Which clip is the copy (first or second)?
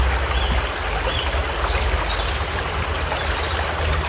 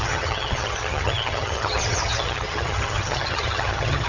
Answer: second